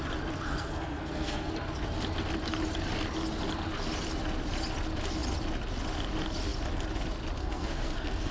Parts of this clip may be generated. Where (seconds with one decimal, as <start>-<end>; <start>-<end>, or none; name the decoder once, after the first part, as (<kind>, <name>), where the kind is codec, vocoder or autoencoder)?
0.5-1.5 (codec, SNAC); 7.4-8.3